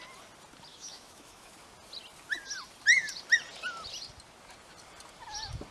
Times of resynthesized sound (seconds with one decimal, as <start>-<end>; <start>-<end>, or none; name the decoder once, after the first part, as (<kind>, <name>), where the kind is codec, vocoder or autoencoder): 0.7-1.5 (autoencoder, DAC-VAE)